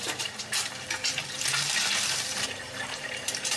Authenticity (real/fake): fake